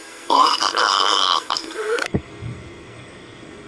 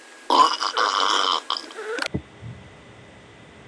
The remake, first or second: first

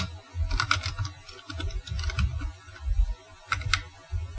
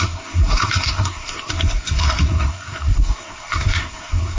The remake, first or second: second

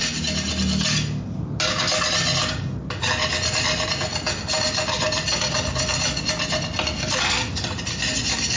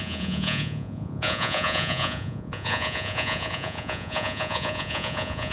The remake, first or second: second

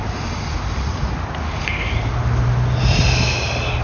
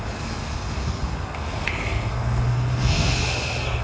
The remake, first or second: second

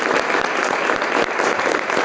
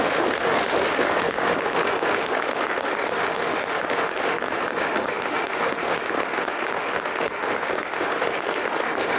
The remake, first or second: second